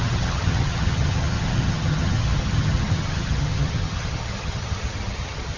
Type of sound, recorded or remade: remade